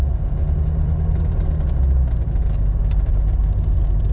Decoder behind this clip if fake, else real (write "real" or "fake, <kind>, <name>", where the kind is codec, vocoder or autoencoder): real